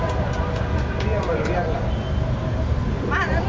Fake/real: real